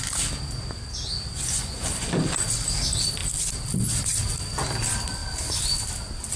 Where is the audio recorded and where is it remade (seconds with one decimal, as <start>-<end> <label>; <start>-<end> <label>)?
0.0-1.3 recorded; 1.3-2.1 remade; 2.1-6.4 recorded

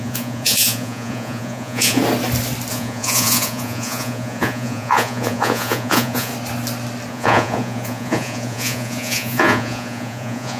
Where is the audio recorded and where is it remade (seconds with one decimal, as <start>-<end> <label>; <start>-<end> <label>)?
0.0-2.0 remade; 2.0-2.7 recorded; 2.7-6.3 remade; 6.3-7.1 recorded; 7.1-10.6 remade

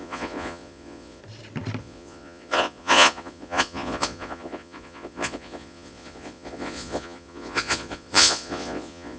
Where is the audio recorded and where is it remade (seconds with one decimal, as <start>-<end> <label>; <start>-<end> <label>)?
0.0-1.2 remade; 1.2-1.8 recorded; 1.8-9.2 remade

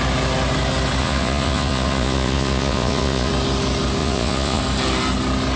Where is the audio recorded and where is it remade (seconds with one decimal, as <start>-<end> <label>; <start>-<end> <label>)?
0.0-1.0 recorded; 1.0-3.3 remade; 3.3-4.0 recorded; 4.0-4.6 remade; 4.6-5.6 recorded

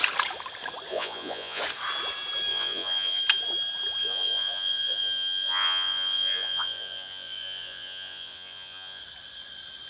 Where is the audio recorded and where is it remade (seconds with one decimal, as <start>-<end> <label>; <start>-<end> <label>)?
0.0-0.9 recorded; 0.9-1.6 remade; 1.6-2.5 recorded; 2.5-3.2 remade; 3.2-4.0 recorded; 4.0-9.0 remade; 9.0-9.9 recorded